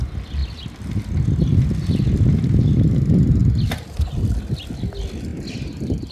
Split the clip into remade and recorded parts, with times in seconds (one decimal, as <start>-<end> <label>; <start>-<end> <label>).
0.0-3.4 recorded; 3.4-4.3 remade; 4.3-6.1 recorded